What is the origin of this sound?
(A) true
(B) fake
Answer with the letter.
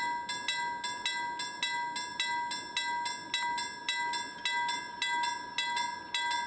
A